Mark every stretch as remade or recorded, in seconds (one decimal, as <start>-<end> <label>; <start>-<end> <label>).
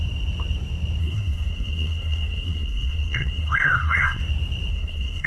0.0-1.0 recorded; 1.0-4.2 remade; 4.2-4.7 recorded; 4.7-5.3 remade